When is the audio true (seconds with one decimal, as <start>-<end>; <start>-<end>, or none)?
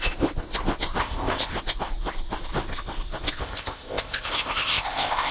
0.0-1.0; 1.5-3.4